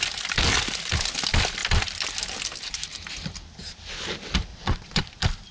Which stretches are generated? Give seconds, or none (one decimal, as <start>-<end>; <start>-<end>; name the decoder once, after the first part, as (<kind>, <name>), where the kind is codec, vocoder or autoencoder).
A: 4.5-5.0 (vocoder, Vocos)